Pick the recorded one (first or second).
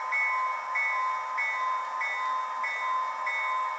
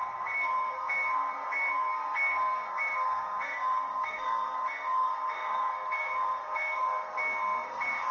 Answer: first